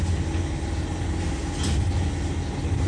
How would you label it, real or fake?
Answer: real